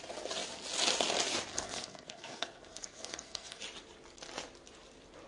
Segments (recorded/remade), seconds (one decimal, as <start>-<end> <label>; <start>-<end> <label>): 0.0-1.5 recorded; 1.5-3.6 remade; 3.6-5.3 recorded